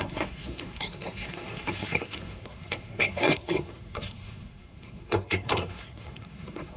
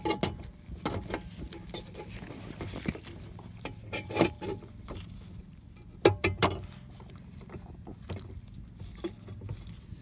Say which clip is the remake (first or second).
first